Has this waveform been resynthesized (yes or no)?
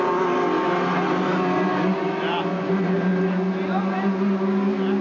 no